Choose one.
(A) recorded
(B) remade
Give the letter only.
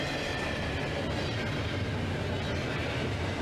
A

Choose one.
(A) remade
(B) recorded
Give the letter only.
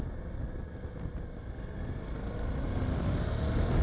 B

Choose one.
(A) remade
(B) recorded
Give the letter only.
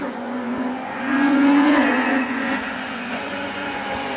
A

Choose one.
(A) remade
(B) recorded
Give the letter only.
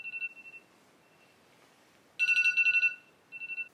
B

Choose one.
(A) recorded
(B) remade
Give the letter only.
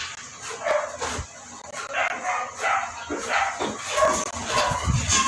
A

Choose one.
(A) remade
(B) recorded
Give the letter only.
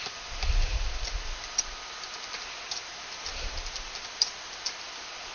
B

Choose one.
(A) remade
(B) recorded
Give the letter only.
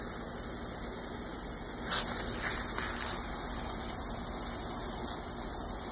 B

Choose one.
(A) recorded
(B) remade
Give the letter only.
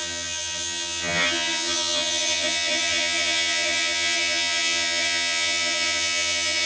B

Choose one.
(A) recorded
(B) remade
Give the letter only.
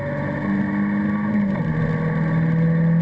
A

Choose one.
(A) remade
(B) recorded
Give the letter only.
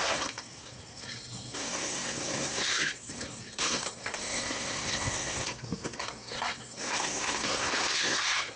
A